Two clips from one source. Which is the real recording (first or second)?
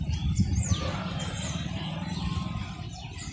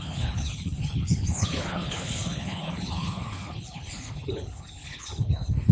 first